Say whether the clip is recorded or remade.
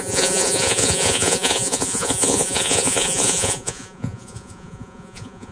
remade